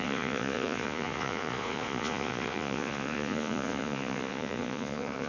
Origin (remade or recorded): remade